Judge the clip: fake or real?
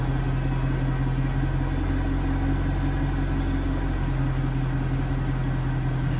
real